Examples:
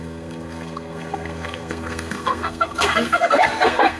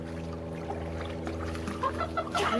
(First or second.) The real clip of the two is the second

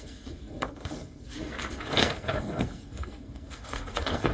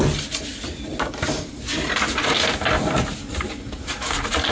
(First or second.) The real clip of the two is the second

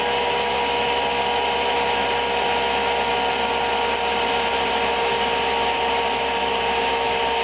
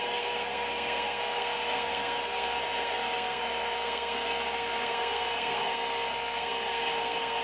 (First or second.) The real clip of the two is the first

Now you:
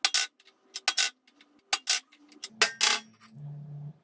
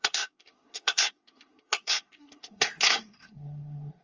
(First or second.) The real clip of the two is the first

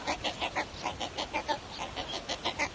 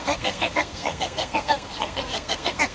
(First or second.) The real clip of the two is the first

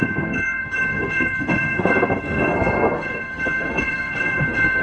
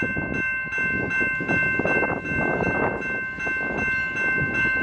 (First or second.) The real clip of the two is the second